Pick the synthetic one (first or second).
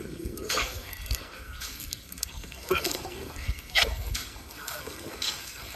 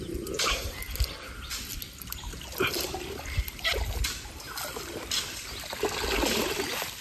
first